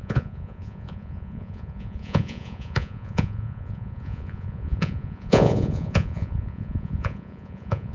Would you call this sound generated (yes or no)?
yes